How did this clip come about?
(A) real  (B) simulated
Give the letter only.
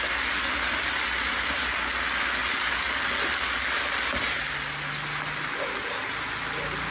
A